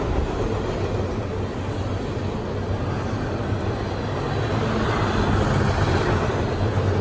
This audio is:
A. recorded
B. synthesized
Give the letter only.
A